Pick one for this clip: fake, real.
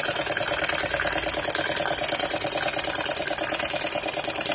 real